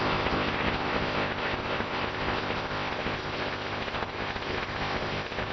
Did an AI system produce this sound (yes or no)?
yes